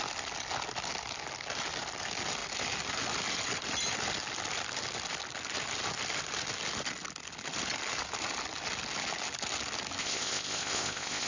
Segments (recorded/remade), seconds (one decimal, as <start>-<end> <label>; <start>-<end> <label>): 0.0-10.0 recorded; 10.0-11.3 remade